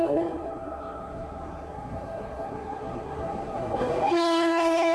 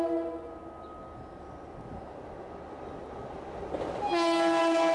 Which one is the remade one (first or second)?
first